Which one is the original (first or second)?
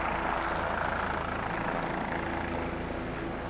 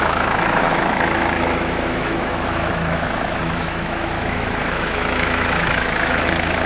first